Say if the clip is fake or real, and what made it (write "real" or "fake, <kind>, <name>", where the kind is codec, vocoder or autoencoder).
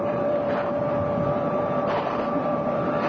fake, vocoder, BigVGAN v2